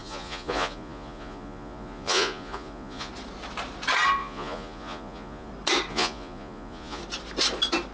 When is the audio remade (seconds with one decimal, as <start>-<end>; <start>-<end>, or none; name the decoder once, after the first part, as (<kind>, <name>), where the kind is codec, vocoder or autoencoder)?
0.0-3.1 (vocoder, Vocos); 4.2-5.5; 5.9-7.0